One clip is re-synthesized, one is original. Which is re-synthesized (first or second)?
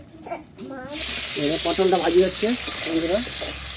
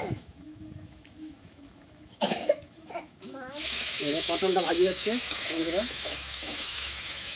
second